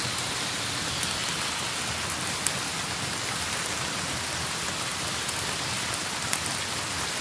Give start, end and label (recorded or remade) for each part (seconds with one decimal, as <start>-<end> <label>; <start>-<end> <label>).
0.0-7.2 recorded